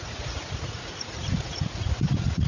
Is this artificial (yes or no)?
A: yes